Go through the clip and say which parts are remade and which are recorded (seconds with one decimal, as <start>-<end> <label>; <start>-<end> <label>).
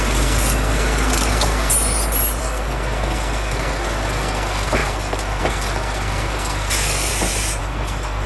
0.0-1.7 remade; 1.7-2.4 recorded; 2.4-7.1 remade; 7.1-7.6 recorded; 7.6-8.3 remade